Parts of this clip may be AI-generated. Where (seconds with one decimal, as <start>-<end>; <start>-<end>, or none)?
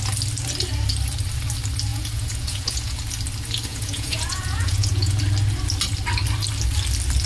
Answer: 1.9-3.0; 3.7-5.2